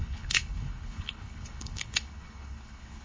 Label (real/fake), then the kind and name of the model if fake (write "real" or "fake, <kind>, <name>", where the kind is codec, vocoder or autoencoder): fake, codec, HILCodec